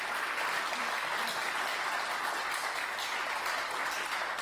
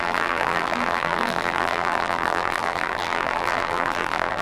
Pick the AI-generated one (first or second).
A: second